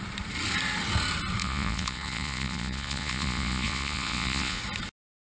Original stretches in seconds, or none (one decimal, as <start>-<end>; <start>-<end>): 0.0-1.4; 4.6-5.3